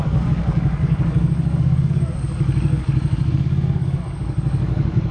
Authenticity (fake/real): fake